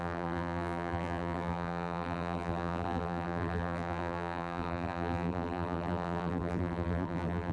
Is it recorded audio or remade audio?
remade